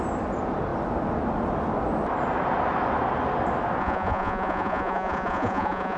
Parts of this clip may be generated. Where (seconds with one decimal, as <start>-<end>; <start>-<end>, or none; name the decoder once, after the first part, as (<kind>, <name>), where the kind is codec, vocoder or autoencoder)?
3.8-6.0 (vocoder, Vocos)